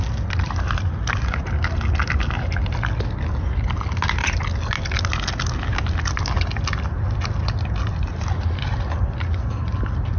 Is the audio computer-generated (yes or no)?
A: no